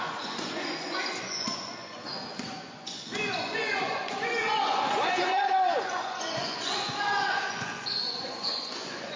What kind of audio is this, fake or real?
fake